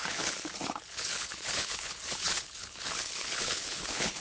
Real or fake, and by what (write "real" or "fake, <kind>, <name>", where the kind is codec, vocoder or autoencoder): fake, codec, HILCodec